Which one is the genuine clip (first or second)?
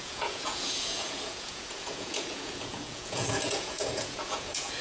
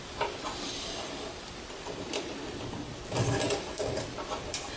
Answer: second